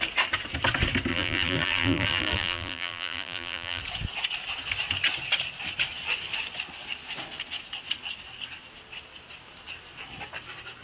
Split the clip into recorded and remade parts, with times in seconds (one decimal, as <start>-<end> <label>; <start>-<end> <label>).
0.0-1.1 recorded; 1.1-3.8 remade; 3.8-10.8 recorded